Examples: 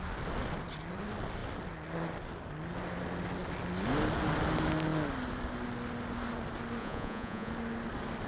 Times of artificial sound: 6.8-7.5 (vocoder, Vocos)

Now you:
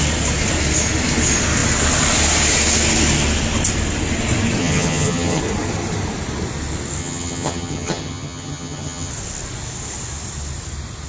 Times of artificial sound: 4.6-5.4 (vocoder, HiFi-GAN); 7.0-9.1